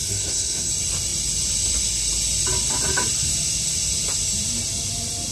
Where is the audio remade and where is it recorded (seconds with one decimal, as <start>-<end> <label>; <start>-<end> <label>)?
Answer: 0.0-0.7 remade; 0.7-5.3 recorded